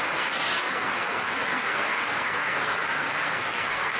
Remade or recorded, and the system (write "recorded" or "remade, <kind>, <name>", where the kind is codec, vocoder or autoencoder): remade, codec, SNAC